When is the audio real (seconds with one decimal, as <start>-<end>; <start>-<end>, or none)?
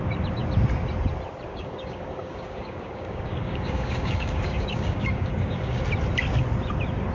0.0-1.5; 5.8-7.1